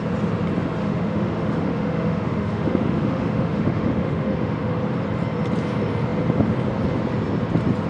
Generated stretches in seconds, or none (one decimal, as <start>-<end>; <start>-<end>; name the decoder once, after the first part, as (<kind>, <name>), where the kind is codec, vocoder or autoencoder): 0.8-4.8 (autoencoder, DAC-VAE)